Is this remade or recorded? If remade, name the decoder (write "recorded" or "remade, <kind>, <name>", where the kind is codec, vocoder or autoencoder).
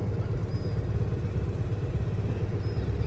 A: recorded